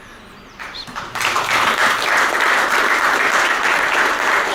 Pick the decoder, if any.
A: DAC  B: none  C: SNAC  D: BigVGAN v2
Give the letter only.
D